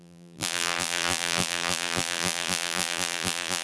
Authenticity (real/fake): fake